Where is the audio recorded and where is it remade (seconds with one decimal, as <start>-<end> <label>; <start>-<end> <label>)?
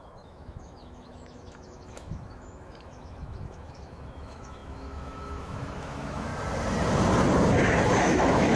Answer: 0.0-6.3 remade; 6.3-8.0 recorded; 8.0-8.6 remade